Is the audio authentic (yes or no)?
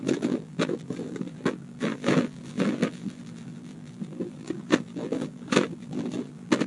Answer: no